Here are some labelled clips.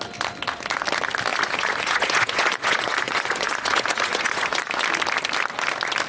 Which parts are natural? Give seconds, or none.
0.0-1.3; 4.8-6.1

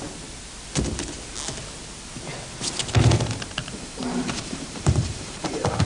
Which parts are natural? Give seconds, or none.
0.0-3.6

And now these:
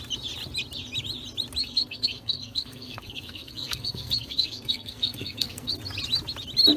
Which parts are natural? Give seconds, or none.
0.0-1.6; 5.7-6.8